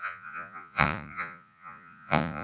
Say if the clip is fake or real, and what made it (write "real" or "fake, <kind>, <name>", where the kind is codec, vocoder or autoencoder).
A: fake, vocoder, Vocos